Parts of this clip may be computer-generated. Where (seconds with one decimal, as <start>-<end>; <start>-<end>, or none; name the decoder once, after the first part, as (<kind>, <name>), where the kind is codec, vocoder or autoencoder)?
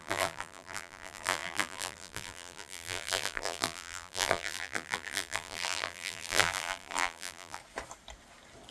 0.0-7.6 (vocoder, BigVGAN v2)